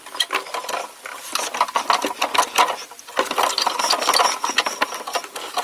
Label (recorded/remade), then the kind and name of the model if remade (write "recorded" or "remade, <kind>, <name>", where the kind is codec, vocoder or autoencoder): recorded